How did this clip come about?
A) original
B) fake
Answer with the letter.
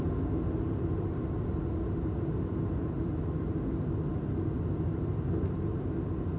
A